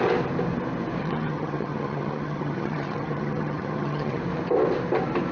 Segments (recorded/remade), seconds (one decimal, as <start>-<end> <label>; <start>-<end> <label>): 0.0-1.0 recorded; 1.0-4.2 remade; 4.2-5.3 recorded